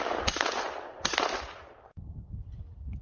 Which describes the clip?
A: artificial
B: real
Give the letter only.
B